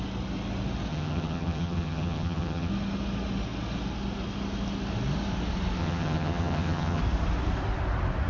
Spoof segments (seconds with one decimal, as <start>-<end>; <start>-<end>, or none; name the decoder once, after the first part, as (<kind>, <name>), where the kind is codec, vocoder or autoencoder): 0.9-2.7 (vocoder, HiFi-GAN); 5.8-7.0